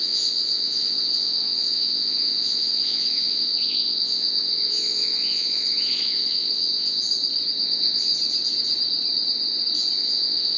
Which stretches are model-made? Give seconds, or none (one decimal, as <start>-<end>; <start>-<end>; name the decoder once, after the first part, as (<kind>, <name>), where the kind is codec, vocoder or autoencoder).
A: 0.0-7.0 (vocoder, Vocos); 7.6-8.1; 10.0-10.6